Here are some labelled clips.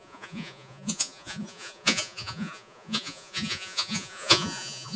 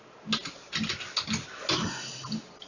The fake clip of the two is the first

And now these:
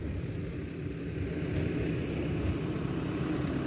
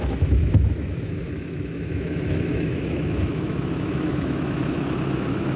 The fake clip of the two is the second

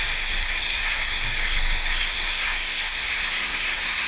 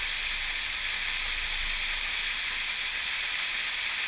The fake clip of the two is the first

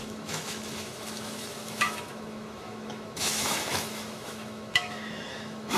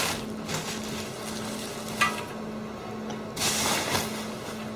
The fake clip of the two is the first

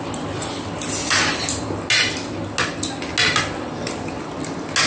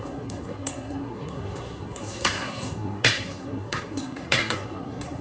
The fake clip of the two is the second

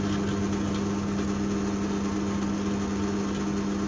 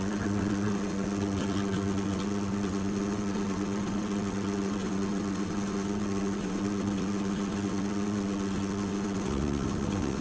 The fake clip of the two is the second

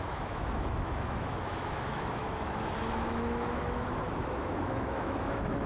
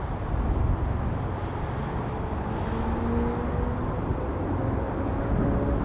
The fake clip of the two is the first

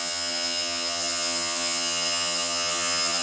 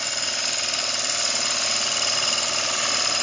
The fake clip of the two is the first